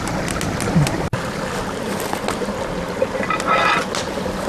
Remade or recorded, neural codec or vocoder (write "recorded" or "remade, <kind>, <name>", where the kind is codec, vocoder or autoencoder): recorded